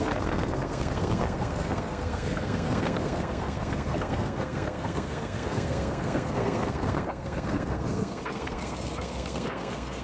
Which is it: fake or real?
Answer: fake